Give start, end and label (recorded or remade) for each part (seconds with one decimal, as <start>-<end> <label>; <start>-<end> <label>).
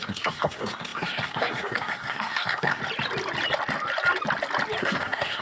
0.0-2.8 remade; 2.8-4.8 recorded; 4.8-5.4 remade